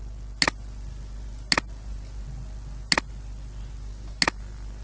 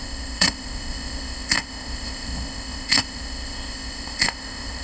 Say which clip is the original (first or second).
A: first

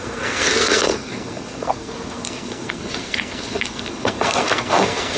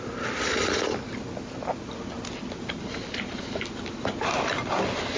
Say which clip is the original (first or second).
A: second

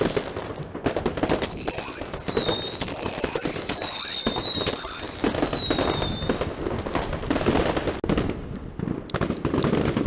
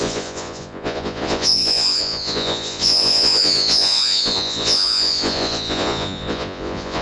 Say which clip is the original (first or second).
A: first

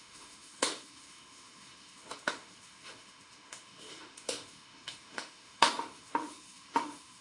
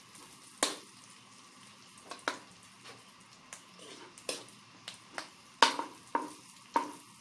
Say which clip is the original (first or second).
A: second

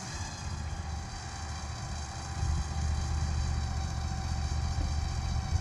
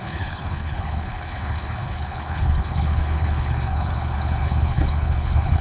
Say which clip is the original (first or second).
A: first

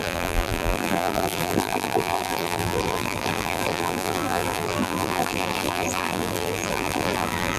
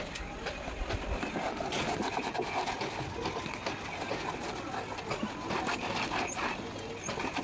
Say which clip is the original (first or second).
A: second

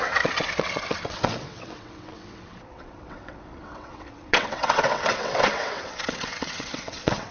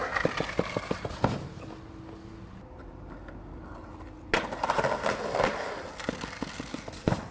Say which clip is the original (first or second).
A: second